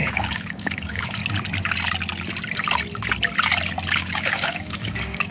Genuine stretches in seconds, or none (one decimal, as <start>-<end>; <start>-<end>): 1.2-3.9